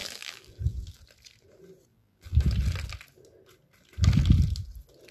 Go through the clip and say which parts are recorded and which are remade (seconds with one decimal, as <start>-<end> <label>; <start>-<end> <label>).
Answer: 0.0-1.0 remade; 1.0-1.9 recorded; 1.9-2.4 remade; 2.4-5.1 recorded